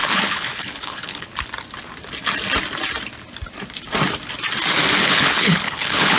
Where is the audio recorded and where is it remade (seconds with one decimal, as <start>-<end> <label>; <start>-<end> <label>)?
0.0-1.3 remade; 1.3-5.0 recorded; 5.0-6.2 remade